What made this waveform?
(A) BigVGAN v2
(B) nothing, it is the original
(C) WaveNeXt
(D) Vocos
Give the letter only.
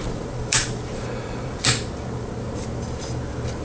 A